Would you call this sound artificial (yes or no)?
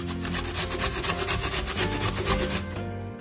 no